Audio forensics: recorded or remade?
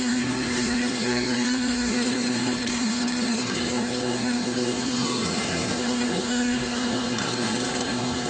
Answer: remade